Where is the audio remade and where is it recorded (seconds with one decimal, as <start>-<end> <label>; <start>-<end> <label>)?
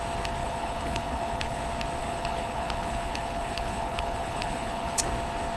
0.0-0.4 recorded; 0.4-1.6 remade; 1.6-2.0 recorded; 2.0-5.0 remade; 5.0-5.6 recorded